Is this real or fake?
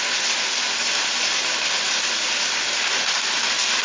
real